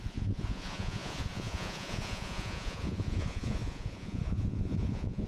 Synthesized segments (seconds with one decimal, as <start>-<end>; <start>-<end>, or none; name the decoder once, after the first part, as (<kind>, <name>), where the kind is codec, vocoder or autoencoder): 0.0-5.3 (vocoder, Vocos)